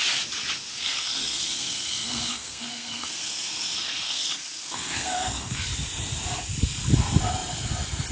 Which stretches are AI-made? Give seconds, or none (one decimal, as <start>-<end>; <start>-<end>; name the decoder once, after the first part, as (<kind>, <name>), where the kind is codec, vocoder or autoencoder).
0.7-5.6 (codec, SNAC)